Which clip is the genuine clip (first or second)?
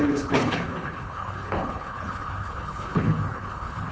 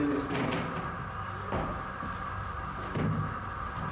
second